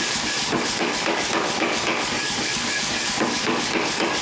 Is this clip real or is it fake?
fake